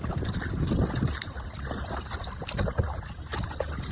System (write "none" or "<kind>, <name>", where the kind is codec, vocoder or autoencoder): none